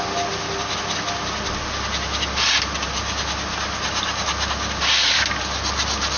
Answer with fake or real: real